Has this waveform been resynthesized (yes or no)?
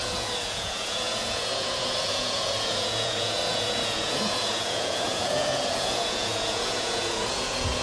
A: yes